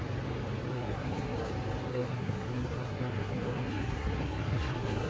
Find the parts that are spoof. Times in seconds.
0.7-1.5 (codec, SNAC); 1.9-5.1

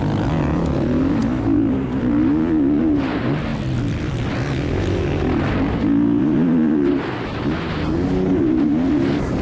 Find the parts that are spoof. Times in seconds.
none

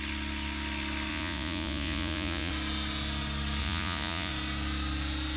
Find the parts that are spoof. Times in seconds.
1.1-2.5 (vocoder, Vocos); 3.6-4.3

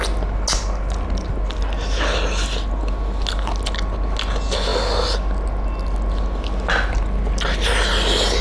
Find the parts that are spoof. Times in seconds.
none

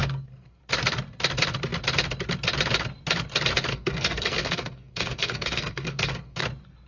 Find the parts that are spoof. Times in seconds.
0.0-0.6 (codec, SNAC); 3.7-6.4